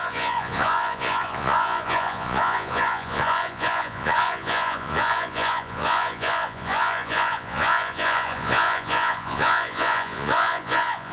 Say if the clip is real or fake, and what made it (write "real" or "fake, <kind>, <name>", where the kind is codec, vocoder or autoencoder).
fake, vocoder, Vocos